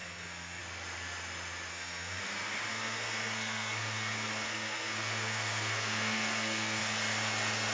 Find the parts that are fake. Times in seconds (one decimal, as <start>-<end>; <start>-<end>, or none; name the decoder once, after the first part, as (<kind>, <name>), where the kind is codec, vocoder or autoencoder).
0.0-0.6 (codec, SNAC); 1.7-2.2; 2.7-6.8